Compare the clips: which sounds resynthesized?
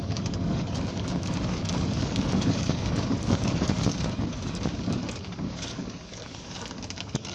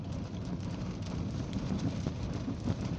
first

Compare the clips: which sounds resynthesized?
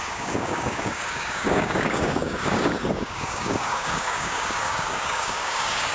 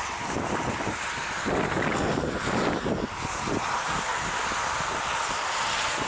first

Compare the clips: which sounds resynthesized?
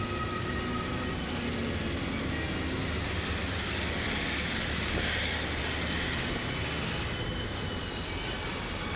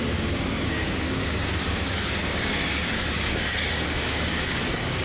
second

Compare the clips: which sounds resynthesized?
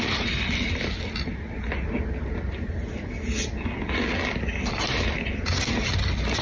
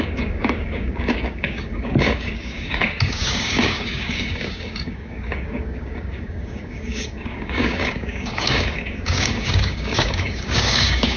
second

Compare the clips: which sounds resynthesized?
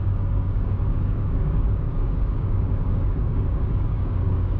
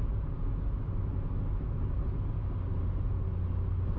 first